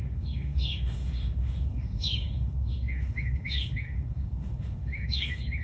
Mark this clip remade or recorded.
remade